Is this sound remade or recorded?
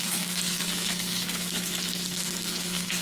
remade